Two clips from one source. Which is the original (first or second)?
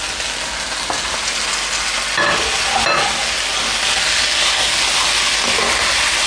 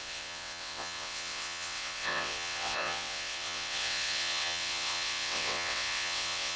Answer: first